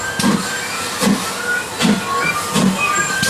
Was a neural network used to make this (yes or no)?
no